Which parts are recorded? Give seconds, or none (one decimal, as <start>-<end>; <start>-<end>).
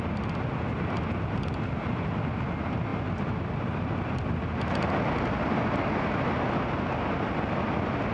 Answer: 0.0-8.1